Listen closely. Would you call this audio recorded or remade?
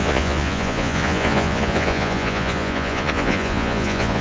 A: remade